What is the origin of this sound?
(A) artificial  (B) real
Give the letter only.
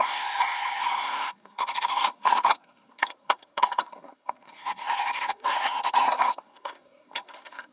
A